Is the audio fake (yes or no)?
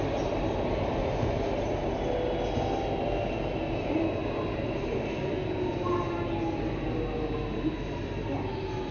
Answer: no